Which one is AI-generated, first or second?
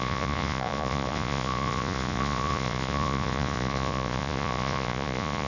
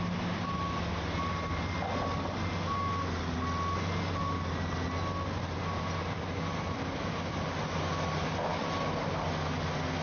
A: first